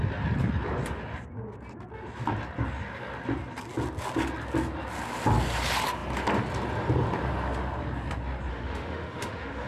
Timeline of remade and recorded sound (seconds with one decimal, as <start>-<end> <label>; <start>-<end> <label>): 0.0-8.5 recorded; 8.5-9.7 remade